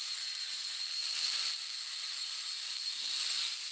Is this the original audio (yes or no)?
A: no